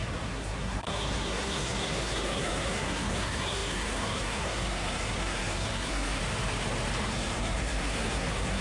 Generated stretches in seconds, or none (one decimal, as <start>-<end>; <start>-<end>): 0.0-6.2; 7.0-8.6